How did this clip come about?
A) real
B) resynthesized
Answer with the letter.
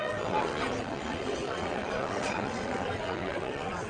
B